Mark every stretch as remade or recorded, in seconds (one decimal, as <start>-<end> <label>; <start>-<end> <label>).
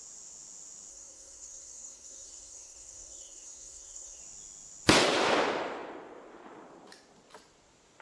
0.0-0.9 recorded; 0.9-4.2 remade; 4.2-8.0 recorded